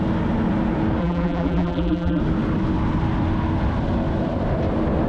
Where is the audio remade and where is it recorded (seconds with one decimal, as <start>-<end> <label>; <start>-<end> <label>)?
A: 0.0-1.0 recorded; 1.0-2.2 remade; 2.2-5.1 recorded